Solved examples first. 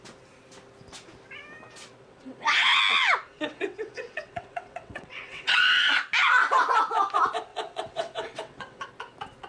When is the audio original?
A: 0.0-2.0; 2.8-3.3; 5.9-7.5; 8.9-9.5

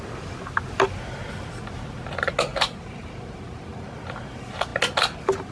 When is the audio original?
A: 0.0-2.5; 3.1-5.5

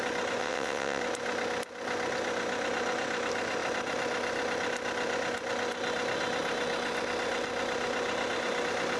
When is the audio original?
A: 0.0-0.4; 1.0-9.0

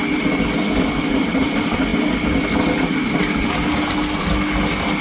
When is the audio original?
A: 0.0-5.0

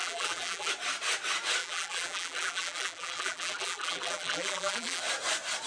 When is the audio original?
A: 0.7-1.6; 5.0-5.7

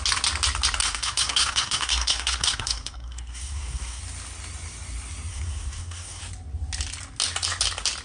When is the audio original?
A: 0.0-0.8; 4.0-5.3; 6.2-8.0

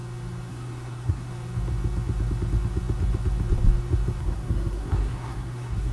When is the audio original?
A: 0.0-0.5; 1.3-4.2